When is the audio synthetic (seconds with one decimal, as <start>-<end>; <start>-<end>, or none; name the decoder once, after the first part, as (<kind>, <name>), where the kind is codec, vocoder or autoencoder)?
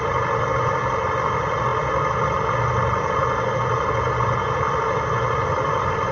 none